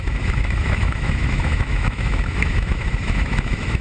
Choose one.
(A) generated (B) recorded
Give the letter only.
A